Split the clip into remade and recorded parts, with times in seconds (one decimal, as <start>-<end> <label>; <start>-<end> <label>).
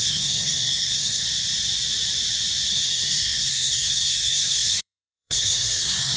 0.0-1.2 remade; 1.2-2.7 recorded; 2.7-6.2 remade